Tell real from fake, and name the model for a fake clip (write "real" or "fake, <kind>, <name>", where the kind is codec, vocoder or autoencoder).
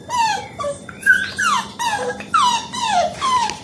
fake, vocoder, BigVGAN v2